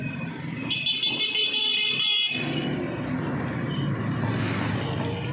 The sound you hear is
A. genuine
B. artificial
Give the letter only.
A